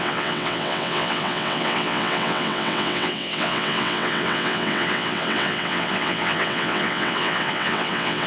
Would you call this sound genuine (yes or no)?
no